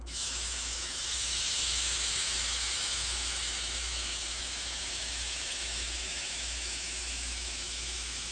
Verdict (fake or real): fake